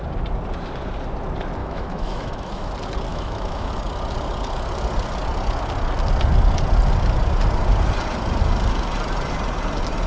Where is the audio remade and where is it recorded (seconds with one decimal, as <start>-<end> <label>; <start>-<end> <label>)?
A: 0.0-1.6 recorded; 1.6-2.7 remade; 2.7-3.1 recorded; 3.1-3.7 remade; 3.7-10.1 recorded